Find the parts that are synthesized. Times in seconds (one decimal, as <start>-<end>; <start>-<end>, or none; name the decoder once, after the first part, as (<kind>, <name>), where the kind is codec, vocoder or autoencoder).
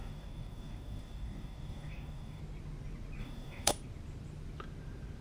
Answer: 0.0-2.4 (codec, DAC); 3.2-3.7